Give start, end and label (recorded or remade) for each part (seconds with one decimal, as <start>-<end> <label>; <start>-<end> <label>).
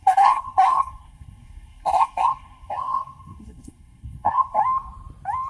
0.0-4.6 remade; 4.6-5.5 recorded